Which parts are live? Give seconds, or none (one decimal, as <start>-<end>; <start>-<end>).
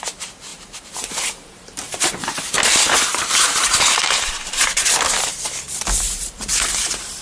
5.3-6.7